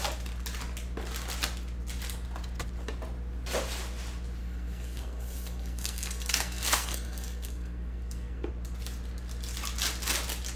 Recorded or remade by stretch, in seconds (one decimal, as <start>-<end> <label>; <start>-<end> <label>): 0.0-4.4 recorded; 4.4-8.5 remade; 8.5-10.6 recorded